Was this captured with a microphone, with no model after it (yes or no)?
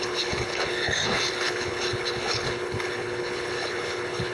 no